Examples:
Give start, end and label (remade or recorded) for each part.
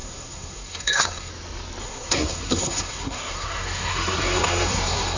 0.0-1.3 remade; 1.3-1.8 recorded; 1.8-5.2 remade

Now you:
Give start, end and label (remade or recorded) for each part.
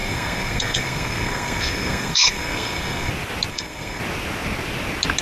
0.0-3.1 remade; 3.1-3.5 recorded; 3.5-4.0 remade; 4.0-5.2 recorded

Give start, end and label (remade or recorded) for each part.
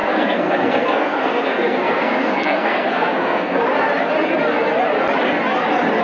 0.0-3.6 remade; 3.6-6.0 recorded